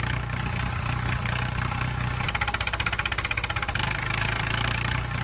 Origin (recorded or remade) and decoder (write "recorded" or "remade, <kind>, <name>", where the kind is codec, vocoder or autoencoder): recorded